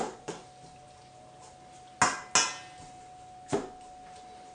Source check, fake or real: real